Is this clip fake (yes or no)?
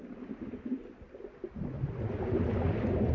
no